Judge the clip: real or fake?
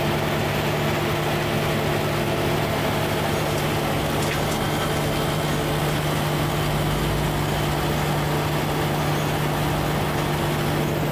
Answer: real